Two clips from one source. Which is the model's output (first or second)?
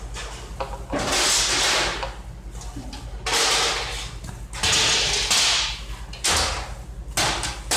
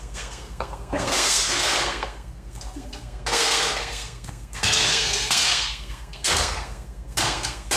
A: second